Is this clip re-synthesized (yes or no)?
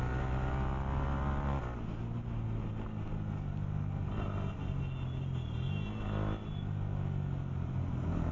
no